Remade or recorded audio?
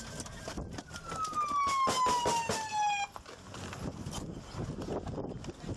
recorded